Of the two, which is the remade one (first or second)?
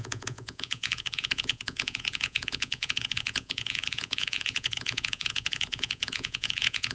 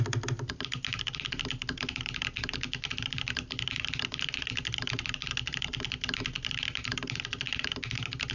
first